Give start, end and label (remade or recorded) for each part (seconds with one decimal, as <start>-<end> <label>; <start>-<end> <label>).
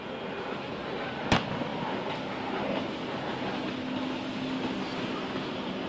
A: 0.0-5.9 recorded